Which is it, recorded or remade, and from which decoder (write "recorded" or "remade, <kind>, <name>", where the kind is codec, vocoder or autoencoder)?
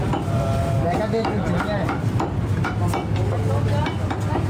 recorded